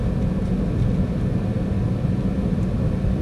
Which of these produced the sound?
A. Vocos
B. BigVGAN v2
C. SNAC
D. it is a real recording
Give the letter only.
D